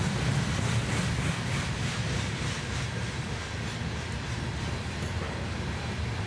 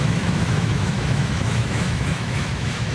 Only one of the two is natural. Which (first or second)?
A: first